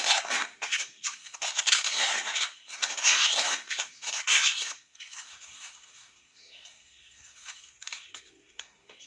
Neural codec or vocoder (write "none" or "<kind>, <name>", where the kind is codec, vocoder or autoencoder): codec, SNAC